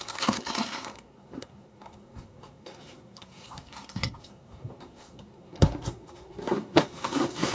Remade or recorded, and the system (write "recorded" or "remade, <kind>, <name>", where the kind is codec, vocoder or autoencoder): remade, codec, SNAC